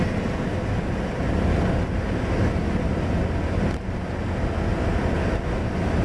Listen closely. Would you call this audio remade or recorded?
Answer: recorded